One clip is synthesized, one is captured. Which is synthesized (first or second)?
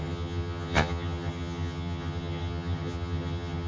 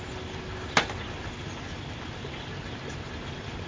first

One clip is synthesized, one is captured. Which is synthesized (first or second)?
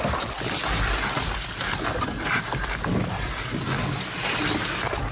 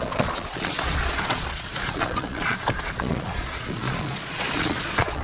second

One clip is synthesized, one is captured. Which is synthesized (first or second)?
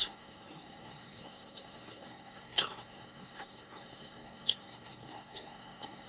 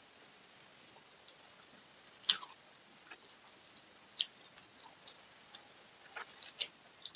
first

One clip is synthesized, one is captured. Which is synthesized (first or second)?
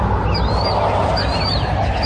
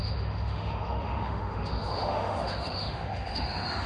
second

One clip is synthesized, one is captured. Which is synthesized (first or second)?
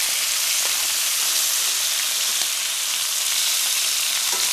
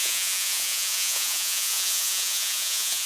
second